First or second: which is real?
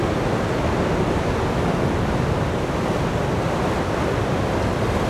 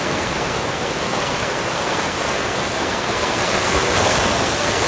first